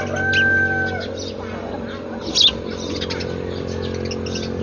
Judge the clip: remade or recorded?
recorded